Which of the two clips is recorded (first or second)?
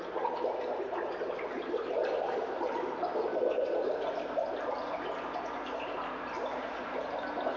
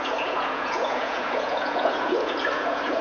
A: first